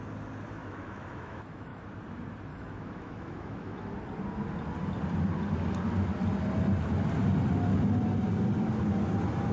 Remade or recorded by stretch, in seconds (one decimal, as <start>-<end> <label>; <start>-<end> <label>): 0.0-0.6 recorded; 0.6-1.8 remade; 1.8-2.5 recorded; 2.5-3.9 remade; 3.9-9.5 recorded